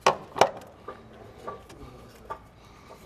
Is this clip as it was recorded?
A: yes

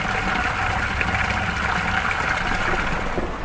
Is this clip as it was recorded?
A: yes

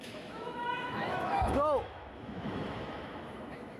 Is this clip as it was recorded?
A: no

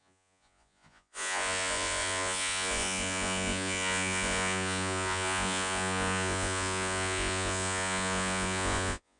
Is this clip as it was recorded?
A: no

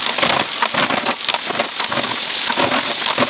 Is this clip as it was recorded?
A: yes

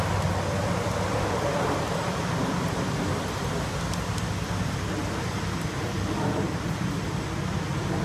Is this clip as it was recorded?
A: yes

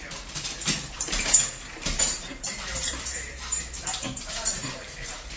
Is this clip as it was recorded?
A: no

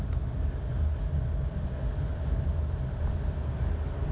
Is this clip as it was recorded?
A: yes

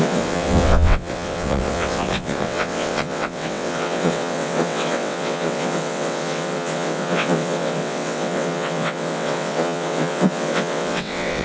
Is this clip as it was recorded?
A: no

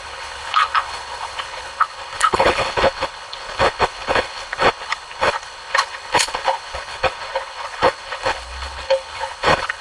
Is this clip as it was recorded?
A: no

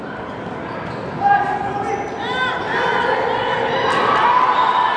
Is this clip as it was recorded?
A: yes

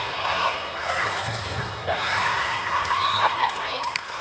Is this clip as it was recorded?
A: no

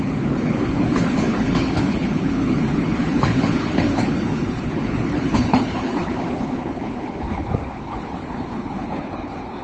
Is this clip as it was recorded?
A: no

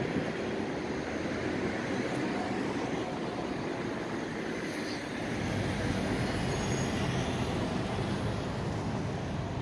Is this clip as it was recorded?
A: yes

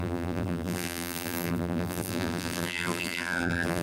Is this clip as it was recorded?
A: no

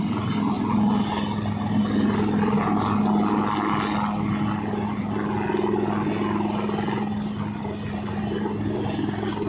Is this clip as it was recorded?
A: yes